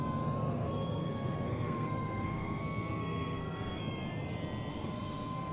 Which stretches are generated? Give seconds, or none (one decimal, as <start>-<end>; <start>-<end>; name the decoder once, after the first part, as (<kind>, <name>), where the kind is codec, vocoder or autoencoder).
0.5-3.8 (codec, SNAC); 4.7-5.5